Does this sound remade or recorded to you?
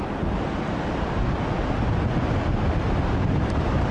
recorded